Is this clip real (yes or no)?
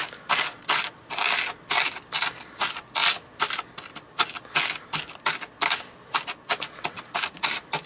yes